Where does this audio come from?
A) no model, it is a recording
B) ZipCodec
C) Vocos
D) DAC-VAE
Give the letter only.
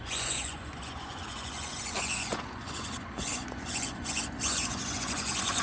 C